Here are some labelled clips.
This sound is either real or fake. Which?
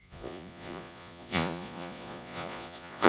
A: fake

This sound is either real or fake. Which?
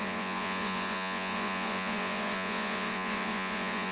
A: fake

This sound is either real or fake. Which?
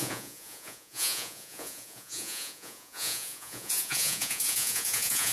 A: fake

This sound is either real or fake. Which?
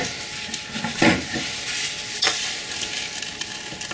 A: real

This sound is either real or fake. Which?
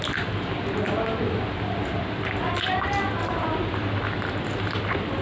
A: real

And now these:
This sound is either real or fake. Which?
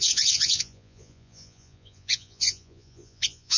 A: fake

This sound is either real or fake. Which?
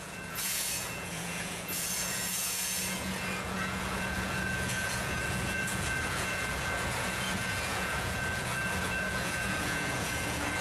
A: fake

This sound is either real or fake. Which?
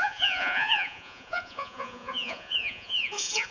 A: fake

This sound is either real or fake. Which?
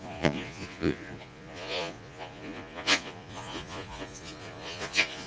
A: fake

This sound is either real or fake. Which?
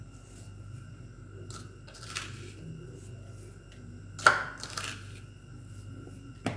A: real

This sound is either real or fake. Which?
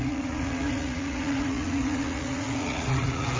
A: fake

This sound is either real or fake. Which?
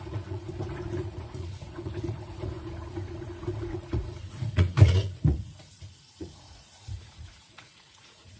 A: fake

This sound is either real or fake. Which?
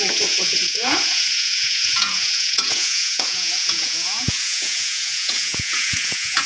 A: fake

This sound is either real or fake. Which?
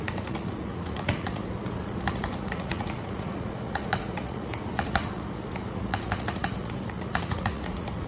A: fake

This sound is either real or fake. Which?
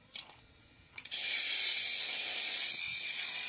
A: fake